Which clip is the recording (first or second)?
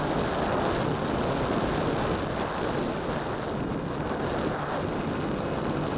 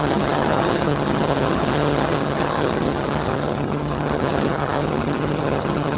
first